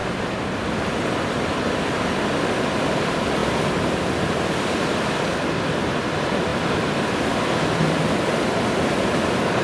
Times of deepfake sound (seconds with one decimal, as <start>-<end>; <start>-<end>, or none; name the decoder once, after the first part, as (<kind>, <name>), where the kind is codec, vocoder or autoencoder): 2.6-3.4 (vocoder, BigVGAN v2); 4.5-9.6